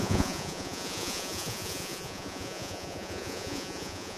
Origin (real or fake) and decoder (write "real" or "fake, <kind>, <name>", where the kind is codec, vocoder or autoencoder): fake, vocoder, Vocos